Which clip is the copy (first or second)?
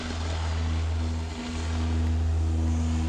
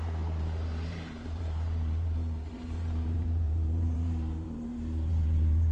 second